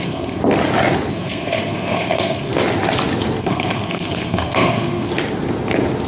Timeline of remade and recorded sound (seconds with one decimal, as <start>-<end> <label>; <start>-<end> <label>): 0.0-0.4 remade; 0.4-1.1 recorded; 1.1-2.5 remade; 2.5-3.4 recorded; 3.4-5.1 remade; 5.1-6.1 recorded